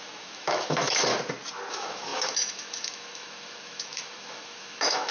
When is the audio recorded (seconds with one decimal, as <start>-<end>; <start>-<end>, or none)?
1.1-1.7